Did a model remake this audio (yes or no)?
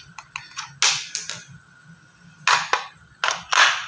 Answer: no